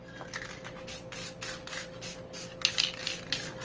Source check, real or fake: real